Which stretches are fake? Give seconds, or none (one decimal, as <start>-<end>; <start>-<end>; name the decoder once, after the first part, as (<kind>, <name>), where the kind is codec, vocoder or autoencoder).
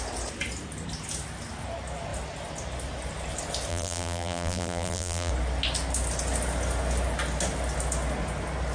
3.7-5.3 (vocoder, BigVGAN v2)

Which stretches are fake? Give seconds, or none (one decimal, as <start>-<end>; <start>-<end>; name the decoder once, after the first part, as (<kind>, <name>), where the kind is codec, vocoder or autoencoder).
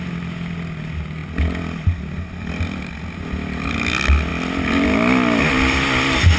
none